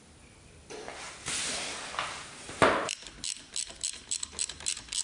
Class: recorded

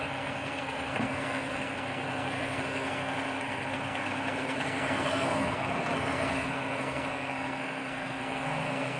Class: remade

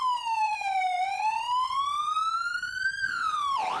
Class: recorded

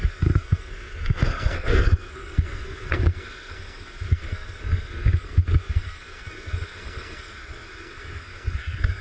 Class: remade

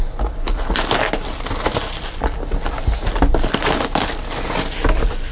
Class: recorded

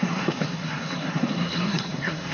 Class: remade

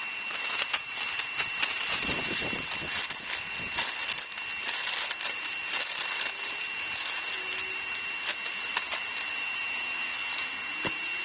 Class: recorded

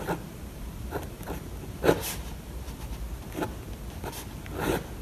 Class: recorded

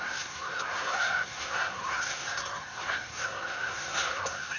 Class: remade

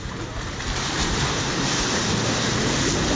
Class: recorded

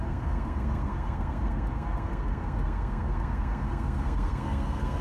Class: remade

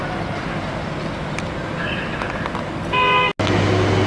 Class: recorded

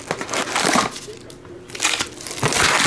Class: recorded